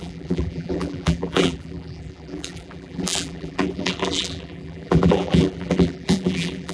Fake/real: fake